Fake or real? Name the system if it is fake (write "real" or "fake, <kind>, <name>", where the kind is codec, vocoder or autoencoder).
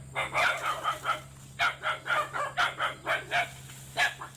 real